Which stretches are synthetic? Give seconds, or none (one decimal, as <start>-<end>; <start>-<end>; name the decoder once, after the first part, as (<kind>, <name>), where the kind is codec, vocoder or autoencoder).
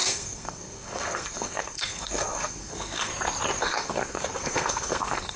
0.0-3.1 (codec, SNAC); 3.6-5.4